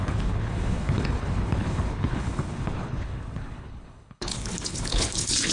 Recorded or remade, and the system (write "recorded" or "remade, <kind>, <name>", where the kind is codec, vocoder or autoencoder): remade, codec, HILCodec